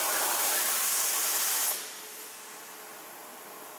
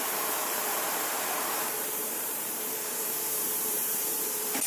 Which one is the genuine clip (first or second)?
first